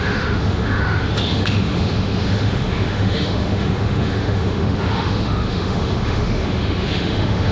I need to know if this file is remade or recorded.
remade